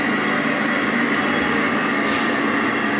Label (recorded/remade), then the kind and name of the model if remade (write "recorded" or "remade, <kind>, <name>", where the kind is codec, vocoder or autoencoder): recorded